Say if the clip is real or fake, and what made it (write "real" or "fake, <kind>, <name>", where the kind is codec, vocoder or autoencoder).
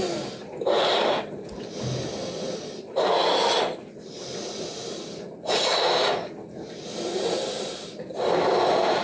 real